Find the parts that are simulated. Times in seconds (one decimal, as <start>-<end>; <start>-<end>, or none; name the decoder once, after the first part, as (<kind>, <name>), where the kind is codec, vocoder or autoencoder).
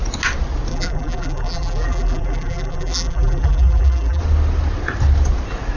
0.7-4.2 (vocoder, BigVGAN v2)